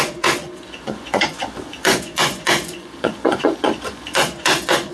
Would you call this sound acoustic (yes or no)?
no